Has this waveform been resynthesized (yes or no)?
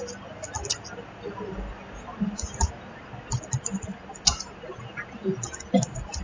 no